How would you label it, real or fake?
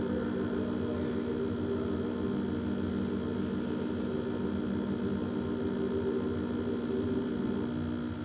real